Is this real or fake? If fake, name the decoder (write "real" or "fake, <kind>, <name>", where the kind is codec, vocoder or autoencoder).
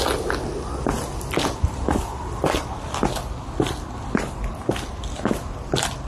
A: real